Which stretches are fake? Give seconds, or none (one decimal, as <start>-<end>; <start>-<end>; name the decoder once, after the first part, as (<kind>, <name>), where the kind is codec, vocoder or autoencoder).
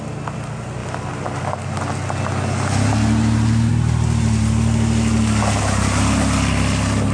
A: none